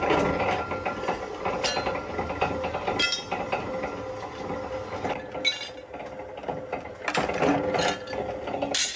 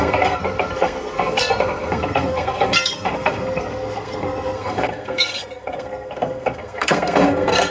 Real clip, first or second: first